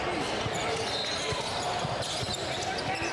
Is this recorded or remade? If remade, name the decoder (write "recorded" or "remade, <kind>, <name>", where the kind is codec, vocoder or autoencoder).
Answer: recorded